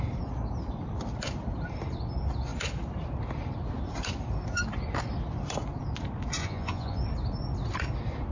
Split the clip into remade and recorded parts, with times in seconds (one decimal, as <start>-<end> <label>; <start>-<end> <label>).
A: 0.0-6.4 recorded; 6.4-7.0 remade; 7.0-8.3 recorded